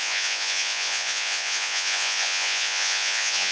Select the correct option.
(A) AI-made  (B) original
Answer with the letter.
A